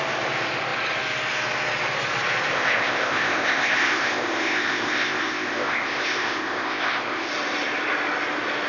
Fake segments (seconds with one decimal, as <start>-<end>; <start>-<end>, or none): 2.5-7.3